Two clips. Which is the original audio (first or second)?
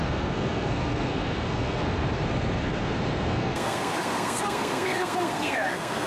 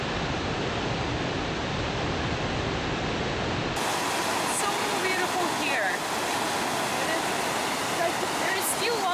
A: second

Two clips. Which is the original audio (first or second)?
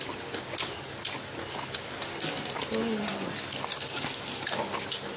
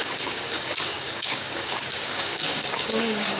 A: first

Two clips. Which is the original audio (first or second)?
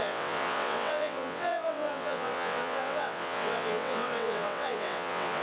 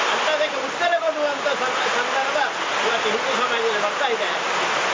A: second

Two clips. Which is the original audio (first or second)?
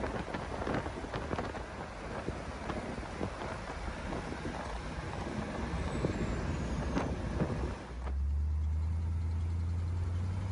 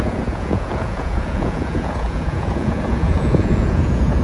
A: first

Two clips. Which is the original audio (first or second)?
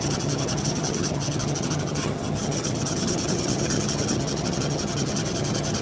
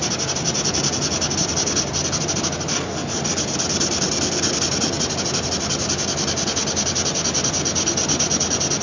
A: second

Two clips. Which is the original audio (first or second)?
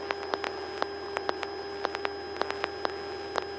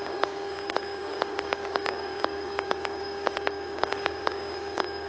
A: first